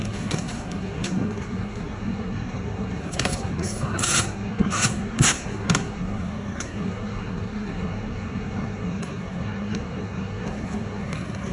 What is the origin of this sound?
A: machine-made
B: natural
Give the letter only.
A